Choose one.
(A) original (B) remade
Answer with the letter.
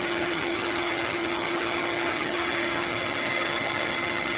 B